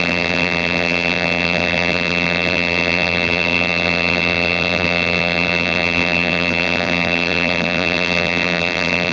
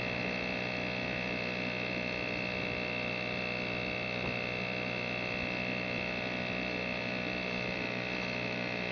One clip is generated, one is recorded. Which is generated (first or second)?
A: first